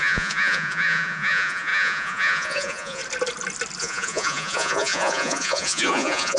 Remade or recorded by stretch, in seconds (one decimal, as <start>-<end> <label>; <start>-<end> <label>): 0.0-3.0 remade; 3.0-3.8 recorded; 3.8-6.4 remade